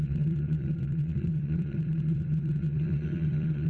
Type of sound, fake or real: fake